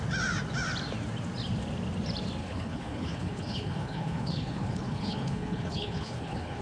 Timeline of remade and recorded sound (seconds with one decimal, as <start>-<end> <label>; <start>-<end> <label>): 0.0-2.4 recorded; 2.4-6.6 remade